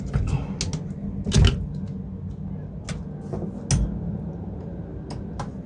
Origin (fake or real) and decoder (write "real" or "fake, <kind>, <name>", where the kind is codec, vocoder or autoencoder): real